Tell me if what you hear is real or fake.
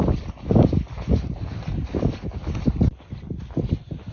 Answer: real